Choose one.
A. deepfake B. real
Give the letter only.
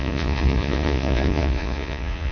A